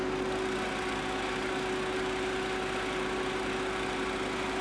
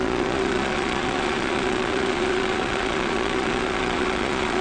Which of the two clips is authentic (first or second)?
first